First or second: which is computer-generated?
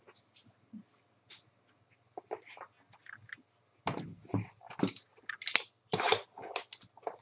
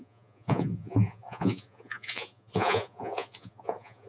second